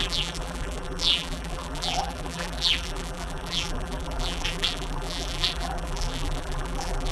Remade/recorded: remade